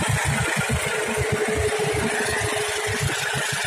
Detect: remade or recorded recorded